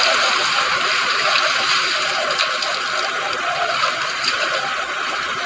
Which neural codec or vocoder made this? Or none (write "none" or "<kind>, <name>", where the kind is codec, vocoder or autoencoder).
none